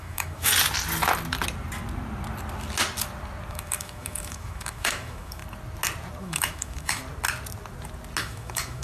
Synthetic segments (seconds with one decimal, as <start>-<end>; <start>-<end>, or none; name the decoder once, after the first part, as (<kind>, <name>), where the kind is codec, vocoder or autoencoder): 0.0-0.5 (autoencoder, DAC-VAE); 3.5-5.4; 6.2-7.0; 8.2-8.8